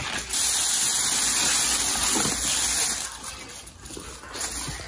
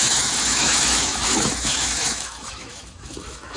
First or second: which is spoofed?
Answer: second